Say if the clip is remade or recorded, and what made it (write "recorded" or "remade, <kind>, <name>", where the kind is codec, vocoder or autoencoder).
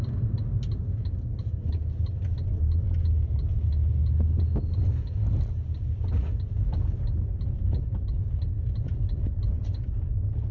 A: recorded